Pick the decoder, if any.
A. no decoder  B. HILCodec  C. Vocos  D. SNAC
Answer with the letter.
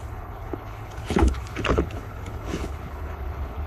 B